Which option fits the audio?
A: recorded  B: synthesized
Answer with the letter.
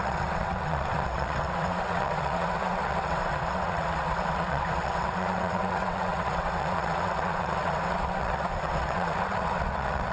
B